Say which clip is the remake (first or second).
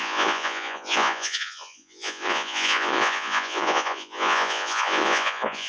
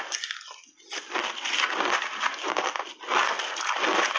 first